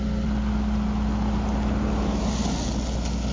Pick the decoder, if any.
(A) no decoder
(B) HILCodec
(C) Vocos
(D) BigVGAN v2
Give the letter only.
A